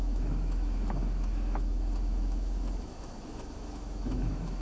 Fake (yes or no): yes